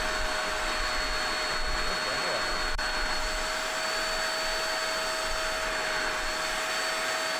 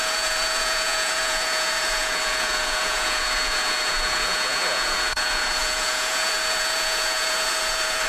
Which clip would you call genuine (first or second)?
first